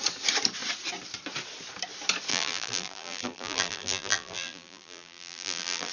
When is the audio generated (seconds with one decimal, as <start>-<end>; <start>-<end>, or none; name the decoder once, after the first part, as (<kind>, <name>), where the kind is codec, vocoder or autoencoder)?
2.3-5.9 (vocoder, BigVGAN v2)